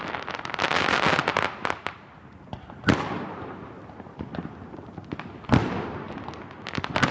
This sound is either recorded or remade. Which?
recorded